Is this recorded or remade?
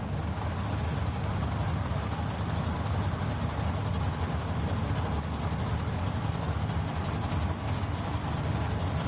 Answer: recorded